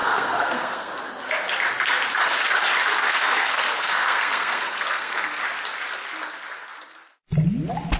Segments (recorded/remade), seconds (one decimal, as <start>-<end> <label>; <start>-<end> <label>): 0.0-0.9 remade; 0.9-3.0 recorded; 3.0-5.4 remade; 5.4-8.0 recorded